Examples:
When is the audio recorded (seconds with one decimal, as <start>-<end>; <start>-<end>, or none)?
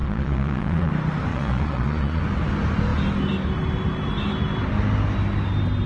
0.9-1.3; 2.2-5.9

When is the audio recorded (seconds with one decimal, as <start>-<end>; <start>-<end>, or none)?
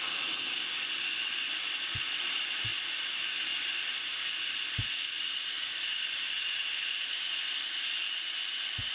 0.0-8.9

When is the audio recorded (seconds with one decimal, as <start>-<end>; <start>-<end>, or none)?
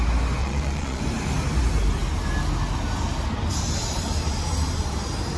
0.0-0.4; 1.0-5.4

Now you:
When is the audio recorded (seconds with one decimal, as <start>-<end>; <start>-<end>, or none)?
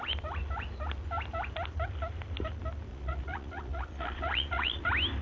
0.0-2.9; 4.8-5.2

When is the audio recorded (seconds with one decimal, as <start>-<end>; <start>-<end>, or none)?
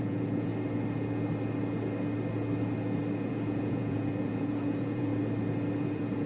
0.5-3.3; 5.1-5.8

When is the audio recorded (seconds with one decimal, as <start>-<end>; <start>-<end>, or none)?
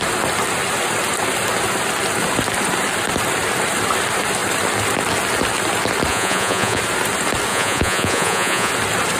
0.0-6.1; 6.8-7.5; 8.7-9.2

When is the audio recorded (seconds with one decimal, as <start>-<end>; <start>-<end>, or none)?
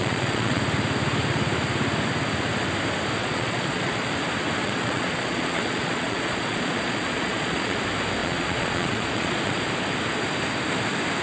0.6-3.2; 4.1-4.6; 7.8-8.2; 9.7-11.2